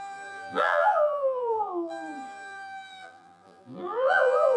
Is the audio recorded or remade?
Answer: remade